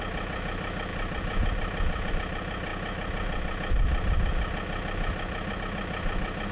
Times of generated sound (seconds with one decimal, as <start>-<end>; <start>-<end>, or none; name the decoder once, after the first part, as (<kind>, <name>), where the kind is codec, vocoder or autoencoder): none